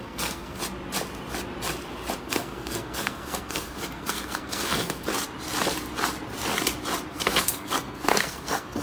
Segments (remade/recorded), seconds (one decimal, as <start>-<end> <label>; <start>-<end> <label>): 0.0-0.6 remade; 0.6-2.2 recorded; 2.2-5.1 remade; 5.1-7.1 recorded; 7.1-8.8 remade